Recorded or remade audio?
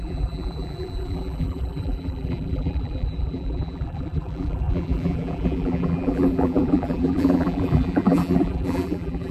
remade